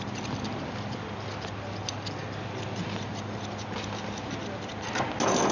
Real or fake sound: real